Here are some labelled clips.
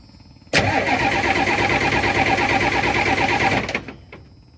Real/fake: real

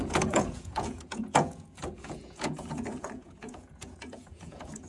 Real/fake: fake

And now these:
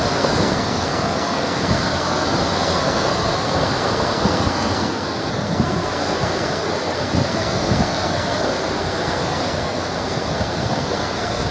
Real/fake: fake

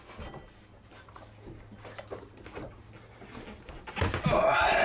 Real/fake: real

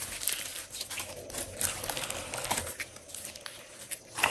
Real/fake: real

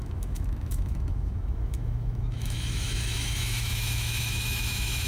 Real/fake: fake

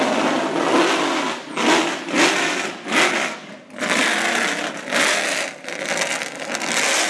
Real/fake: real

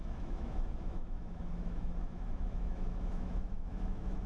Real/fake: fake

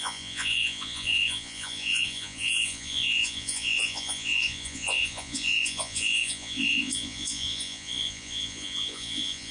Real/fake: fake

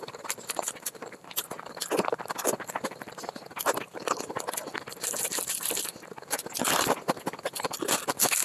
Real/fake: real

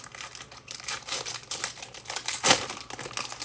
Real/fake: real